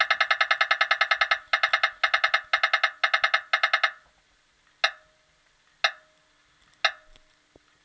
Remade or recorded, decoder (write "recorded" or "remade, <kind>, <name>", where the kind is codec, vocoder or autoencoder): recorded